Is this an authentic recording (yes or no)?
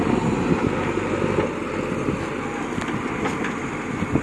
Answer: yes